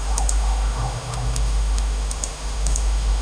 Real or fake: fake